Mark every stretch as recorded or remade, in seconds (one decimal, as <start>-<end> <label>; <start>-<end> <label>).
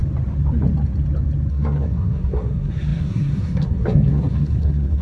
0.0-1.5 recorded; 1.5-5.0 remade